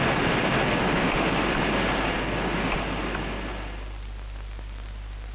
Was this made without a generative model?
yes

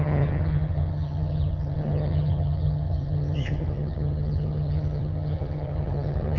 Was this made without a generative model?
no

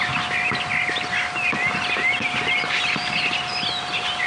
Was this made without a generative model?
yes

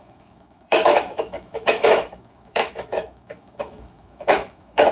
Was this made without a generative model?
no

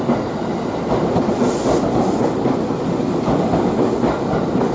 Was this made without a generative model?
yes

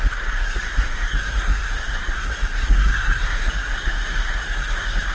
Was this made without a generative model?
no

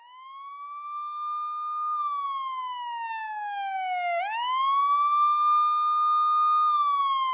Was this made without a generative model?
yes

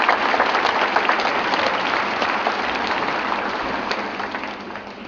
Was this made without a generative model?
yes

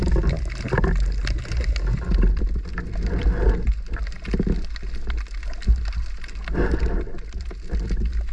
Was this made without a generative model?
yes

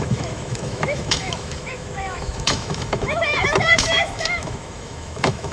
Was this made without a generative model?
no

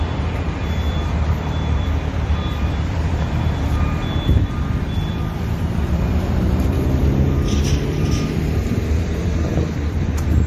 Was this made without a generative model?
no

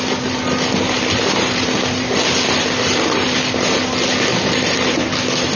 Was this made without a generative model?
yes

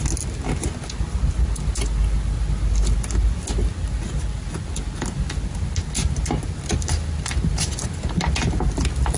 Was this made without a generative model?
yes